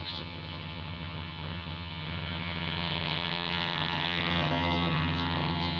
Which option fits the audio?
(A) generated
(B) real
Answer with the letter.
A